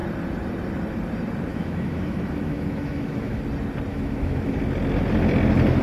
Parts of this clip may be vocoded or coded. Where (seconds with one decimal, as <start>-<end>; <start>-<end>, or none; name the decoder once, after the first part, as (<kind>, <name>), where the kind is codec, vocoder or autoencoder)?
1.5-3.4 (autoencoder, DAC-VAE); 3.9-4.6